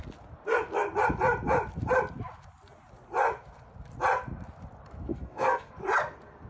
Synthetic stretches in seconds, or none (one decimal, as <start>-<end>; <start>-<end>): 5.1-5.7